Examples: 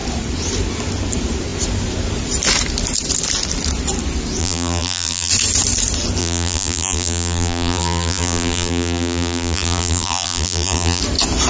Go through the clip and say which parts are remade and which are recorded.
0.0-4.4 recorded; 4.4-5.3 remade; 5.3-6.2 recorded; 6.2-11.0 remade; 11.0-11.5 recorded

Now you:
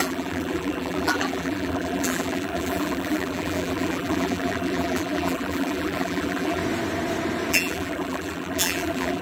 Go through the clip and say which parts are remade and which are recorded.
0.0-6.6 remade; 6.6-7.5 recorded; 7.5-9.2 remade